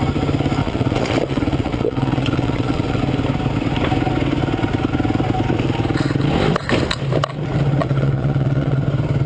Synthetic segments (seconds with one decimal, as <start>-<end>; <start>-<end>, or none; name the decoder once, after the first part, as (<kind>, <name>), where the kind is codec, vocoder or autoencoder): 0.6-3.0 (vocoder, WaveNeXt); 7.8-8.8